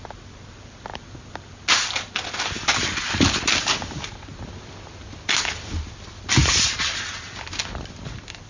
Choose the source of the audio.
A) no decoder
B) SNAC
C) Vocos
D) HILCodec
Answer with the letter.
A